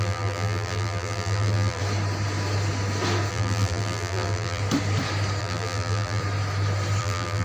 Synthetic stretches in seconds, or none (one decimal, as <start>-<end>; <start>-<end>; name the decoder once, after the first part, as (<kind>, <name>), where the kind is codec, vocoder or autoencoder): 0.0-1.8 (vocoder, BigVGAN v2); 3.3-4.6; 5.4-6.2; 7.0-7.4